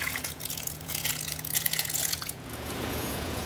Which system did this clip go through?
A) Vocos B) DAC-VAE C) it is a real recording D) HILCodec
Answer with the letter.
A